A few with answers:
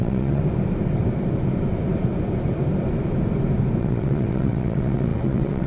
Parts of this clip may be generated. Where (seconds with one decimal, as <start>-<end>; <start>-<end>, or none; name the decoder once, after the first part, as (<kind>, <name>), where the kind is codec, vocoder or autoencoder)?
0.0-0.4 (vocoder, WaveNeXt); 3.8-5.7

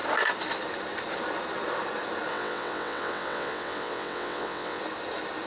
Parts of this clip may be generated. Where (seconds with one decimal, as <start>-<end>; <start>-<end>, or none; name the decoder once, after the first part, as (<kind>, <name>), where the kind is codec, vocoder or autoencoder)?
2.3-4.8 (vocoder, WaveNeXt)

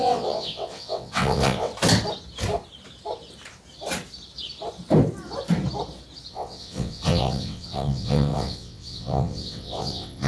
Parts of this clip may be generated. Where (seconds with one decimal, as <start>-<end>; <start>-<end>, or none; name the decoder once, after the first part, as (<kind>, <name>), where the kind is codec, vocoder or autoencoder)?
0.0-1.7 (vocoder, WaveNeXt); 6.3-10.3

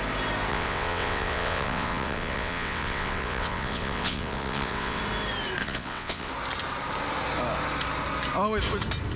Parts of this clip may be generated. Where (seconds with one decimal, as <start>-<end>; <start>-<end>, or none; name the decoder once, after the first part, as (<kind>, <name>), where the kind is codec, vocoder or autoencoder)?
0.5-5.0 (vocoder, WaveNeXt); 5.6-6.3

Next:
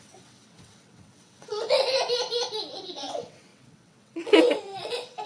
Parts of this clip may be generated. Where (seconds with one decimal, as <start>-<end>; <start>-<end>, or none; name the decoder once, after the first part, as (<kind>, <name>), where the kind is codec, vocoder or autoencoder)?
0.0-1.9 (vocoder, WaveNeXt); 2.7-5.3

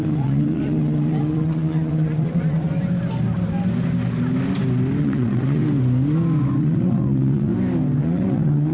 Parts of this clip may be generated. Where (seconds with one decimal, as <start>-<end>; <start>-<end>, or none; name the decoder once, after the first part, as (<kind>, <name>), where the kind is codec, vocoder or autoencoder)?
0.0-2.7 (vocoder, WaveNeXt); 5.0-5.6; 6.6-7.5; 8.0-8.7